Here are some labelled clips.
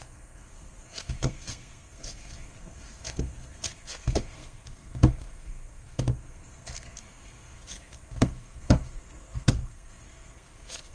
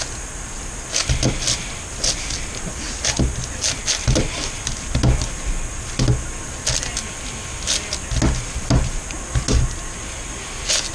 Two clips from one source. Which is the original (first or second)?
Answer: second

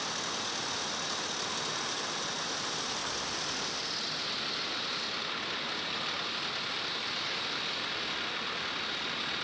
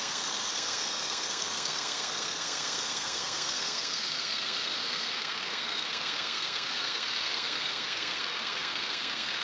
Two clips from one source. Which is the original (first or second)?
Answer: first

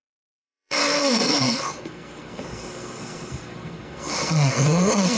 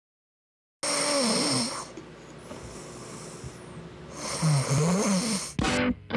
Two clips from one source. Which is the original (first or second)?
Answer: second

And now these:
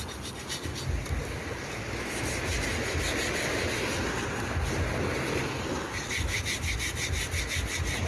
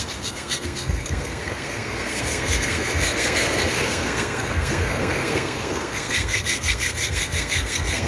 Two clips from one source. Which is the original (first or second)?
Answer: first